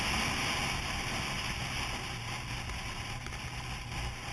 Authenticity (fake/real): real